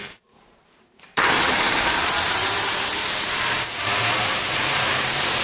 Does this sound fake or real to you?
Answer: fake